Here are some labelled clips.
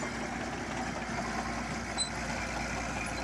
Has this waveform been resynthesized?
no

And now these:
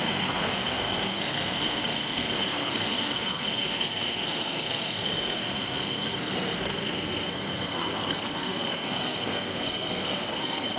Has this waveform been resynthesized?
yes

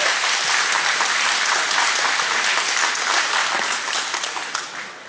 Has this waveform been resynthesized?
no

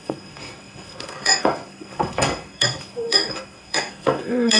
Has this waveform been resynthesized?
yes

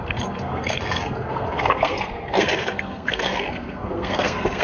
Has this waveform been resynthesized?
yes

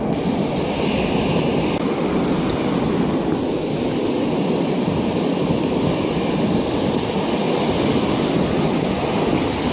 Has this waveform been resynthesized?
no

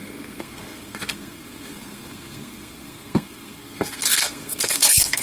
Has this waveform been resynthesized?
yes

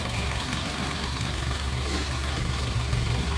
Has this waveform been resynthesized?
yes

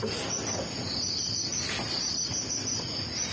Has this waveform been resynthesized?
no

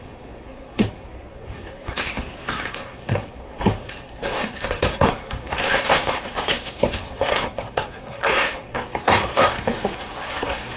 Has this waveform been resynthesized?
yes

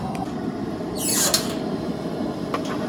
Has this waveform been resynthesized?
no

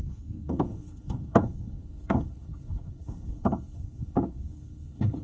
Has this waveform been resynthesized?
yes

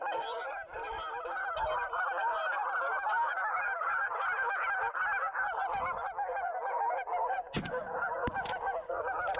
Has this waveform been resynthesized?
no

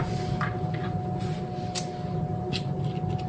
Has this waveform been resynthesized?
no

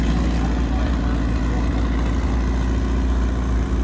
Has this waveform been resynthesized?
no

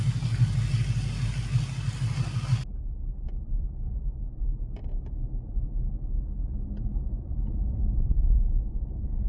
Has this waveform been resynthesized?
no